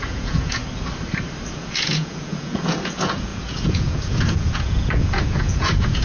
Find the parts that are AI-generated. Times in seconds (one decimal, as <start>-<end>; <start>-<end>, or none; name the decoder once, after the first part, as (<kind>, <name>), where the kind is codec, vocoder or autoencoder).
0.0-0.6 (vocoder, Vocos); 1.5-6.0